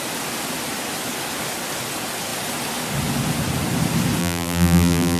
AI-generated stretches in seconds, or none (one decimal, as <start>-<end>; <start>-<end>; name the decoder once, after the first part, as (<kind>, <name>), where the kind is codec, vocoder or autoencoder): 4.2-5.2 (vocoder, BigVGAN v2)